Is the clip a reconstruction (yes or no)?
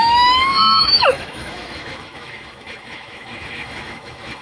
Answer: yes